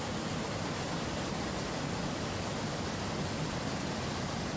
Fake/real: fake